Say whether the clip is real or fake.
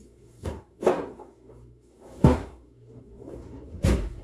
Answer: fake